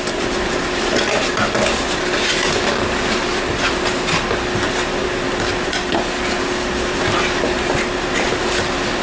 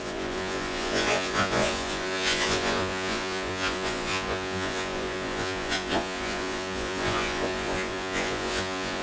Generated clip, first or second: second